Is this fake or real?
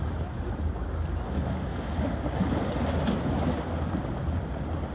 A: real